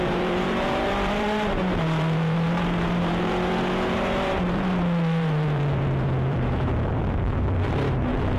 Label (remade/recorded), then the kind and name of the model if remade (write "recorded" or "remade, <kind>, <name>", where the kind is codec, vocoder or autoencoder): remade, vocoder, BigVGAN v2